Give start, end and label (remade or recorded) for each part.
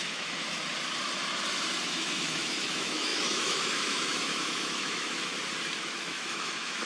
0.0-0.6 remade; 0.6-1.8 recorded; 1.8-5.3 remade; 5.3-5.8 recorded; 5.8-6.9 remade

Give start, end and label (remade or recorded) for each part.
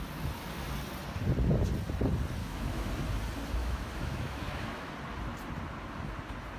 0.0-2.4 recorded; 2.4-2.9 remade; 2.9-3.6 recorded; 3.6-4.9 remade; 4.9-6.6 recorded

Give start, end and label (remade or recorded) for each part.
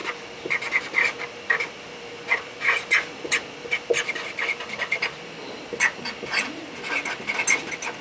0.0-8.0 recorded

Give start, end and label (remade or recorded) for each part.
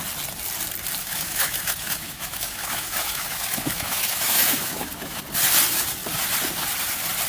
0.0-1.0 recorded; 1.0-5.2 remade; 5.2-7.3 recorded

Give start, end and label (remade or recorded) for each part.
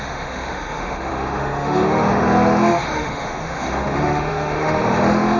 0.0-5.4 remade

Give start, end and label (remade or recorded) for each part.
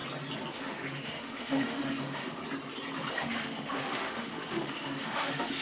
0.0-0.5 recorded; 0.5-2.4 remade; 2.4-3.1 recorded; 3.1-5.6 remade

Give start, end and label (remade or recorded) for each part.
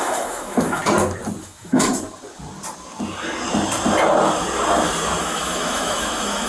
0.0-0.8 remade; 0.8-1.4 recorded; 1.4-1.9 remade; 1.9-5.2 recorded; 5.2-6.5 remade